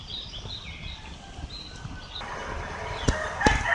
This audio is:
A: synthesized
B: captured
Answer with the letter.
B